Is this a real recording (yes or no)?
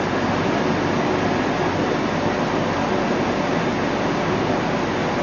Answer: yes